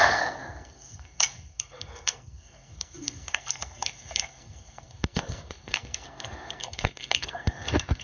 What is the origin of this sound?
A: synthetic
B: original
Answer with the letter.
A